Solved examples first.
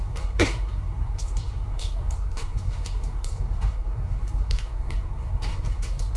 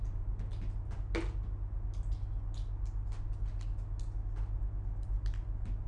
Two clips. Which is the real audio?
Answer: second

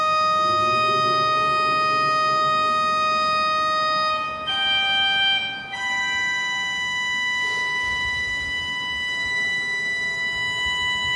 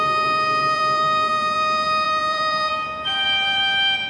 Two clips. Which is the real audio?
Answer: first